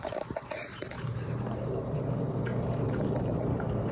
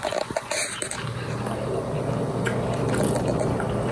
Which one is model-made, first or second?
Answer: first